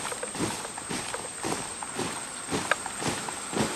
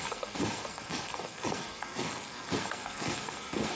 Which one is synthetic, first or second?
second